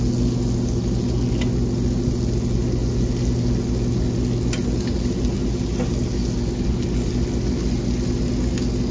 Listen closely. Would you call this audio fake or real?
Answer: real